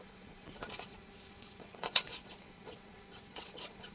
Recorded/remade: remade